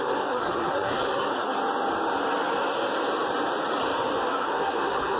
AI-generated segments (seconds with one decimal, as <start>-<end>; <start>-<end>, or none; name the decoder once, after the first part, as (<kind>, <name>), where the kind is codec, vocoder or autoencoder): 0.0-1.5 (codec, SNAC); 4.2-5.2